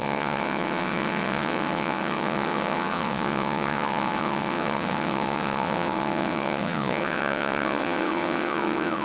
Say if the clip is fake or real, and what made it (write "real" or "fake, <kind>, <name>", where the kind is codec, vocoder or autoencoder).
fake, vocoder, WaveNeXt